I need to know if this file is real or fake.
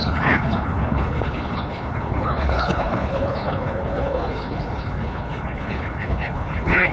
fake